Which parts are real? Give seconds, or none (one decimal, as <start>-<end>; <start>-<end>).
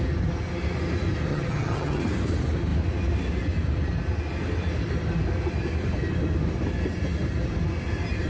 0.0-1.3; 2.0-8.3